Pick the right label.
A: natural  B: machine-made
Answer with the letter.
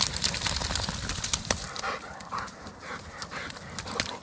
A